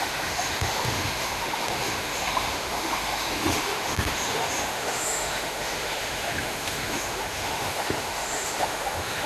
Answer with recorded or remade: remade